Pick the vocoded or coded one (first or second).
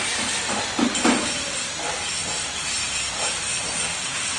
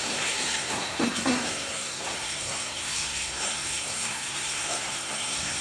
second